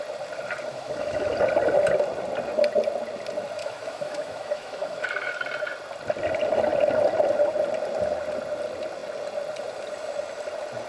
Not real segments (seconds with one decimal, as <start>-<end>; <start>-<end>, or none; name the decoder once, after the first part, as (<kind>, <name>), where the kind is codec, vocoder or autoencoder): 0.7-1.3 (autoencoder, DAC-VAE); 3.6-5.3